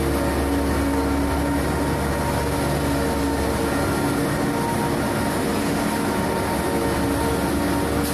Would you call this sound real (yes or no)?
yes